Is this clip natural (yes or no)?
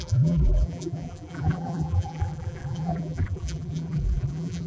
no